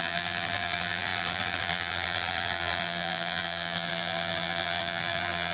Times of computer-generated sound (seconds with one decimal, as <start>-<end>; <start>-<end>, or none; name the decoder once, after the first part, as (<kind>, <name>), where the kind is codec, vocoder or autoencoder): 0.0-5.5 (vocoder, BigVGAN v2)